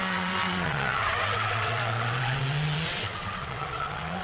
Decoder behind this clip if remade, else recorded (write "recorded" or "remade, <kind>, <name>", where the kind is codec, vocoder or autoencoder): remade, vocoder, WaveNeXt